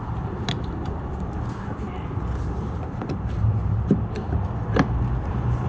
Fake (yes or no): yes